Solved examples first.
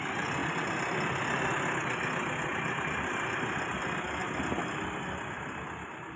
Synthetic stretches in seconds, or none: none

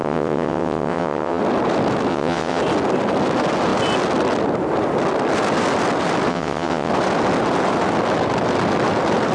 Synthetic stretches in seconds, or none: 0.0-1.4 (vocoder, WaveNeXt); 2.1-2.6; 6.3-6.9

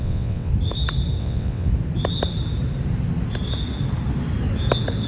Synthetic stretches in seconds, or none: 0.0-0.5 (vocoder, WaveNeXt); 1.2-1.7